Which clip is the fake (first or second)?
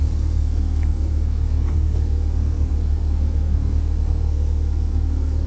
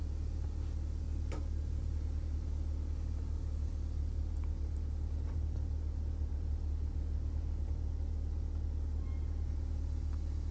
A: first